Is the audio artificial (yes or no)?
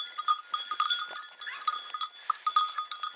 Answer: no